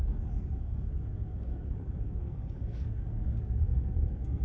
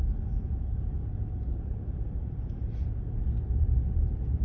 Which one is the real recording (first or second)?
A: second